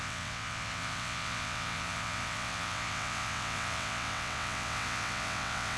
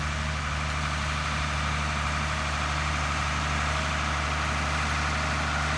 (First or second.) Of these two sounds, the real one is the second